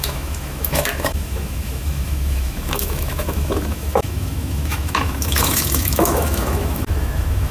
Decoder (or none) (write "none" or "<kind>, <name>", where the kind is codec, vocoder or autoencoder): autoencoder, DAC-VAE